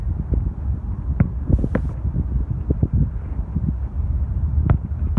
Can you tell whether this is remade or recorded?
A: recorded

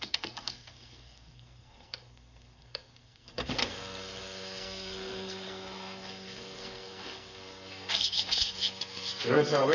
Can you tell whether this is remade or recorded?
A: remade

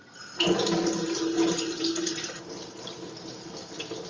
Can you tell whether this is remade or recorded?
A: recorded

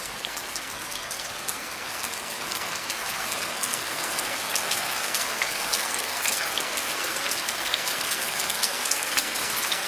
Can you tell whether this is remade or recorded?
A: remade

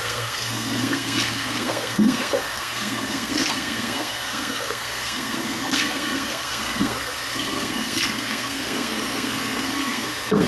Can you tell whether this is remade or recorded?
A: remade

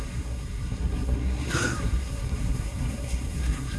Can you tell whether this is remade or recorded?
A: remade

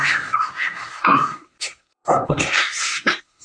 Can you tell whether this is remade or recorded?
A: remade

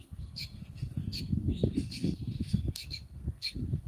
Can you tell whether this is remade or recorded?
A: remade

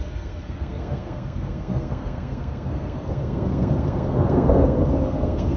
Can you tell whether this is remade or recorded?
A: remade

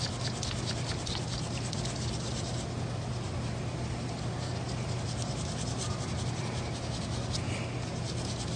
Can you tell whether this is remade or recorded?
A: recorded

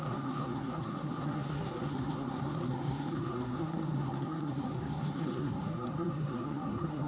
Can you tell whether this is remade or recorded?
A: remade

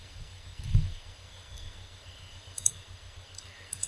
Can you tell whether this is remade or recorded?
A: remade